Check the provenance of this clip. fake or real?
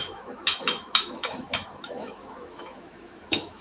fake